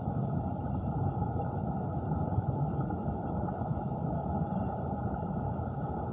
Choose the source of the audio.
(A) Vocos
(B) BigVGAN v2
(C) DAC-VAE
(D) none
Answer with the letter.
B